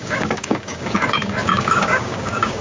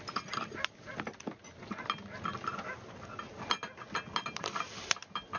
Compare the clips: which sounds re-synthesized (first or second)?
first